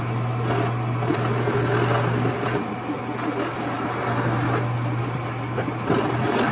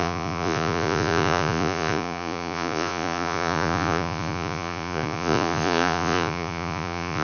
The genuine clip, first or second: first